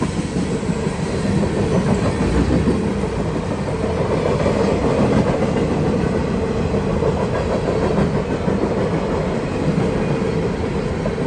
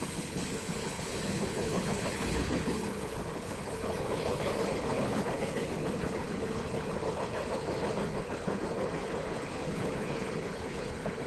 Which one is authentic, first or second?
first